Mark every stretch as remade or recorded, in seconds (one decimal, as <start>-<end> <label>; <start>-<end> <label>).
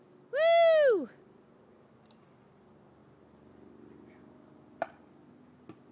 0.0-5.9 recorded